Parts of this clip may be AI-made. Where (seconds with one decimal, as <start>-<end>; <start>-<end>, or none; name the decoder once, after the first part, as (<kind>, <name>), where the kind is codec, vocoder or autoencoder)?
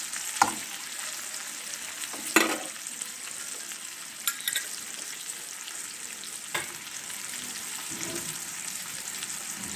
7.8-9.1 (vocoder, BigVGAN v2)